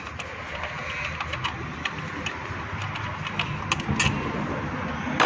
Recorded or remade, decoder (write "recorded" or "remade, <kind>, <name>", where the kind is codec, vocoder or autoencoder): recorded